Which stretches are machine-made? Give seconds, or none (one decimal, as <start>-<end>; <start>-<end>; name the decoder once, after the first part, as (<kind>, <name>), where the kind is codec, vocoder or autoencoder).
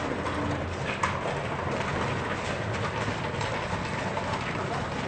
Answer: none